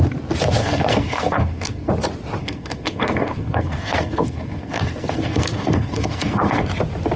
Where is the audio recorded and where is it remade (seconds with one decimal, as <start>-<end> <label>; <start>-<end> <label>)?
0.0-0.6 recorded; 0.6-1.9 remade; 1.9-2.4 recorded; 2.4-6.7 remade; 6.7-7.2 recorded